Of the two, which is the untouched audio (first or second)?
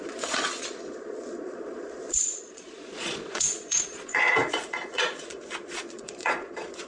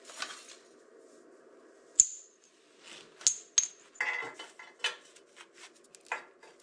second